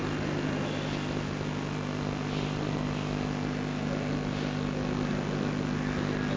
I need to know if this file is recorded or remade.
recorded